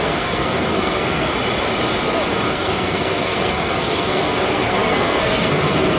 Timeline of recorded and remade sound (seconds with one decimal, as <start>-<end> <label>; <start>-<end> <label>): 0.0-1.3 remade; 1.3-2.5 recorded; 2.5-6.0 remade